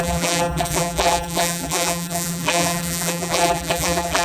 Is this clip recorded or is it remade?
remade